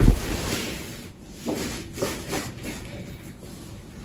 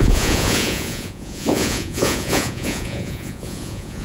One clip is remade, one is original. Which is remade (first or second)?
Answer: second